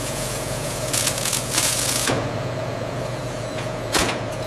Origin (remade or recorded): remade